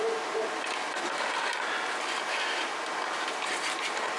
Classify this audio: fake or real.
real